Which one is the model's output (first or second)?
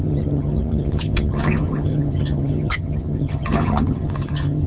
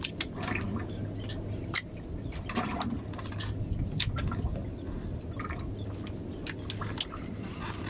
first